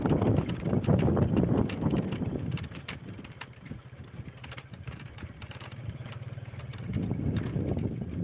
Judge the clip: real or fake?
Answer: fake